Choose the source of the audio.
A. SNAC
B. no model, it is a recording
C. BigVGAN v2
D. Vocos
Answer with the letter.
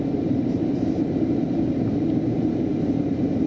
C